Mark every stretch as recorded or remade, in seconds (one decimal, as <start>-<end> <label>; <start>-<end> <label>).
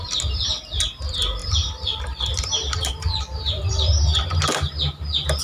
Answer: 0.0-1.4 recorded; 1.4-4.2 remade; 4.2-5.4 recorded